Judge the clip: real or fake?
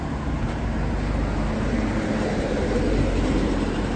fake